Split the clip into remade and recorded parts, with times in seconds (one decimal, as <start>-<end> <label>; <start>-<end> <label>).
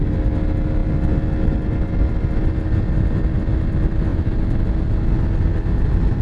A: 0.0-6.2 recorded